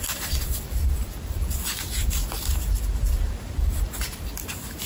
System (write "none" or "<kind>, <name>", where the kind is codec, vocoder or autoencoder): none